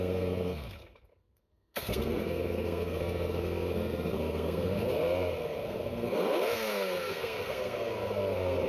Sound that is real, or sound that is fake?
fake